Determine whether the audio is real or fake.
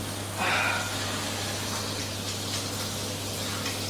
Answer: real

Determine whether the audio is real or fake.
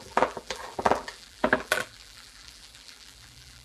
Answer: fake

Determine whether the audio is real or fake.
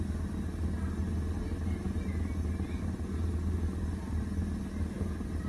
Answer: real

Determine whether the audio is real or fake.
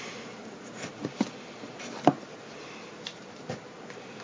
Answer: fake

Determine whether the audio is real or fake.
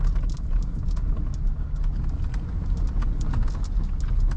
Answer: real